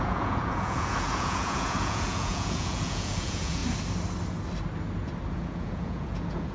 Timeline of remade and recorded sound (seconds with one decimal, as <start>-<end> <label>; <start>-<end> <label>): 0.0-3.6 remade; 3.6-5.3 recorded; 5.3-6.5 remade

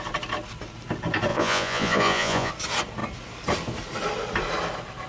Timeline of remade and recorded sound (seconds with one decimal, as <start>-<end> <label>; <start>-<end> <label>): 0.0-1.3 recorded; 1.3-2.5 remade; 2.5-5.1 recorded

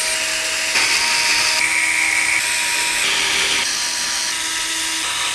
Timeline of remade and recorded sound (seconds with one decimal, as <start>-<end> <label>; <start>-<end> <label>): 0.0-5.3 recorded

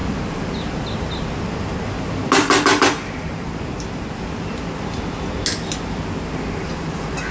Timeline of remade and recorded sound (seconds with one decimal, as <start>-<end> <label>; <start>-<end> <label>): 0.0-7.3 recorded